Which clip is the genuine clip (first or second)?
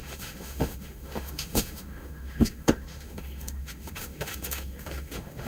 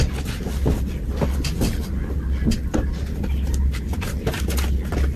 second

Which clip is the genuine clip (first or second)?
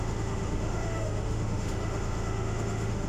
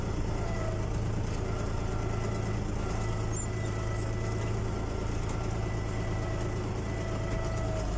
second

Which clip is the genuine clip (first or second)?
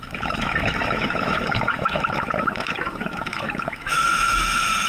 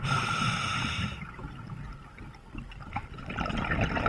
second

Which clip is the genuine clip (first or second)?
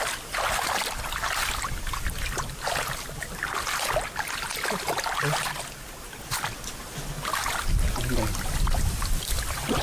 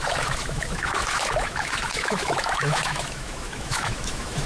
first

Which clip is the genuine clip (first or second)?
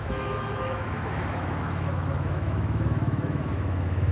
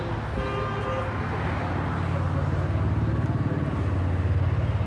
second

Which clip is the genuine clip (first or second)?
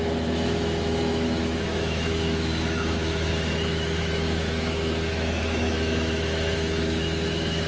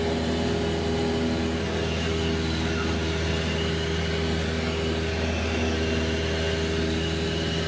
second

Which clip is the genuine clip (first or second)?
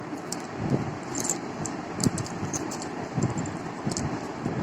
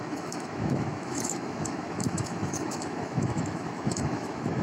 first